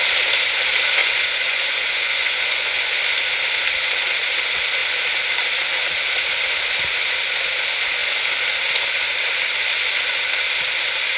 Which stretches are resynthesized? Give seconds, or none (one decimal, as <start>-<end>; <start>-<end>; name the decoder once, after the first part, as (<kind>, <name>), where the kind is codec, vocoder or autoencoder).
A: 1.0-3.0 (vocoder, Vocos)